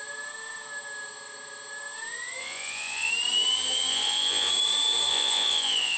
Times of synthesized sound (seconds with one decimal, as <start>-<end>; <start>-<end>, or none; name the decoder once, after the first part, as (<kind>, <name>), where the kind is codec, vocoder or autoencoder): 2.4-3.1 (vocoder, Vocos); 3.9-4.5; 5.1-6.0